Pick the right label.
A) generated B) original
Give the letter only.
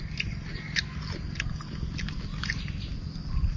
B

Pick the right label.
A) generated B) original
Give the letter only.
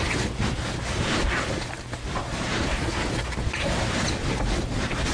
B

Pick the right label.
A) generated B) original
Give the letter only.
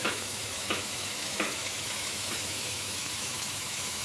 A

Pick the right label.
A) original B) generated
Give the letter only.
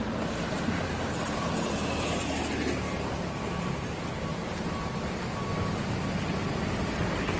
A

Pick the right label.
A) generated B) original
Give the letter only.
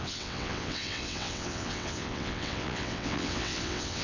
A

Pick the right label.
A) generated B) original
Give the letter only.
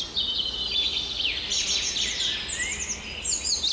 B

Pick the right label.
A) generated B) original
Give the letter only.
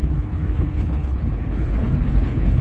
A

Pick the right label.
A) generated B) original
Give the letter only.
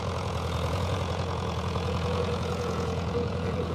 A